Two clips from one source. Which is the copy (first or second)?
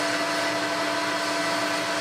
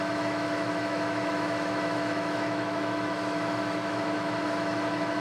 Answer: second